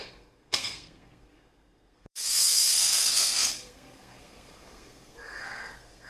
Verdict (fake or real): fake